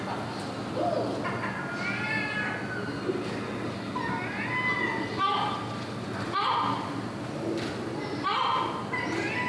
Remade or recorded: recorded